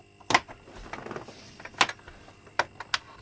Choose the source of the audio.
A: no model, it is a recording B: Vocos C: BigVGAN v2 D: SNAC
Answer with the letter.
A